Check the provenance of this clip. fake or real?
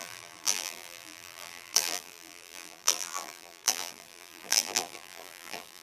fake